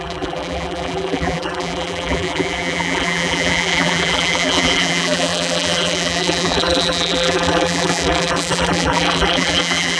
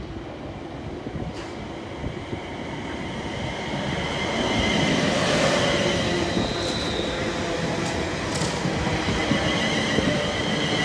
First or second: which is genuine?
second